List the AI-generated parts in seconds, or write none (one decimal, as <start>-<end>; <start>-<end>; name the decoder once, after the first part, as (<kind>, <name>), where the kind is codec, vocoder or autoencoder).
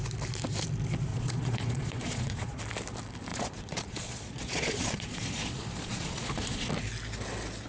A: 1.1-2.6 (vocoder, Vocos); 3.3-6.7